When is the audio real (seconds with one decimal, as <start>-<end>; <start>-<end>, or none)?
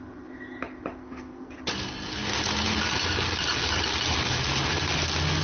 0.0-1.0; 1.5-5.4